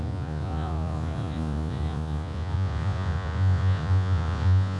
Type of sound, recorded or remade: remade